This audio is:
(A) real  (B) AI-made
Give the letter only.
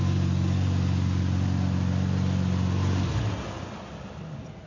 A